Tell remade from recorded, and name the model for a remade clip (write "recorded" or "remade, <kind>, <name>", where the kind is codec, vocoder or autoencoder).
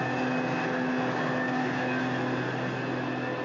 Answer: recorded